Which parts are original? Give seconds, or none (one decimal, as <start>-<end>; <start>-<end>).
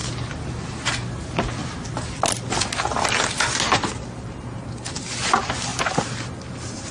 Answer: 0.0-6.9